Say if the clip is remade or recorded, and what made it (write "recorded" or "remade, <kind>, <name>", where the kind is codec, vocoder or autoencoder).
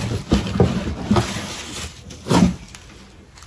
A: recorded